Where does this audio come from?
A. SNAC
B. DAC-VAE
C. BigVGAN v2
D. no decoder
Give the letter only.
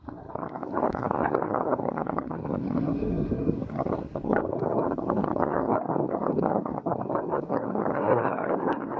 A